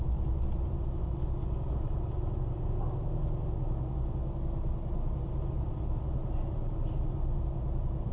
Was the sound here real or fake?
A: real